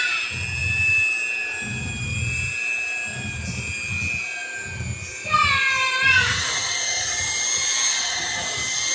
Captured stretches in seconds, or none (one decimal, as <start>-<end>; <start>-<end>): 0.0-8.9